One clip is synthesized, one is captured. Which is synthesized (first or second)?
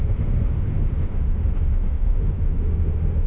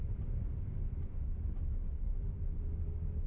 first